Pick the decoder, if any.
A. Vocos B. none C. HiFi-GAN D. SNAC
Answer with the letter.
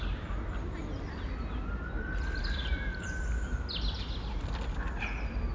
B